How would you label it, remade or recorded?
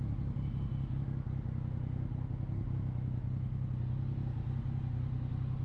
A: recorded